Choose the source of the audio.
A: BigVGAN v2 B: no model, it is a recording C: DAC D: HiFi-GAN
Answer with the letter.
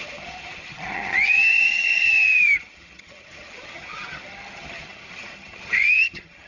D